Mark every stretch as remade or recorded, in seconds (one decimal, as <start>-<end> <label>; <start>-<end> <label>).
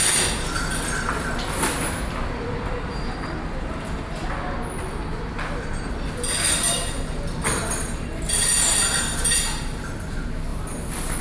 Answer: 0.0-11.2 recorded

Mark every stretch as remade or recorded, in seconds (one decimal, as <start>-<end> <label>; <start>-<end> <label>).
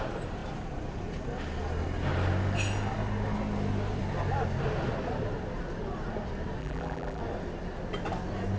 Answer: 0.0-6.6 recorded; 6.6-7.2 remade; 7.2-8.6 recorded